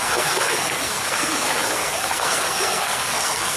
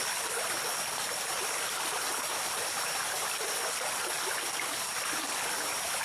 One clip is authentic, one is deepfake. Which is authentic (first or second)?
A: second